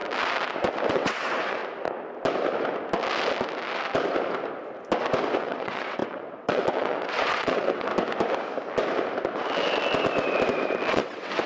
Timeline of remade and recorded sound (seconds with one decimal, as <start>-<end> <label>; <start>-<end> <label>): 0.0-0.9 recorded; 0.9-1.6 remade; 1.6-5.4 recorded; 5.4-7.9 remade; 7.9-10.9 recorded; 10.9-11.5 remade